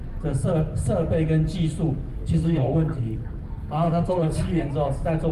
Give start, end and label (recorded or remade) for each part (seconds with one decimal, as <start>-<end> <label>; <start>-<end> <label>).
0.0-2.2 recorded; 2.2-4.6 remade; 4.6-5.3 recorded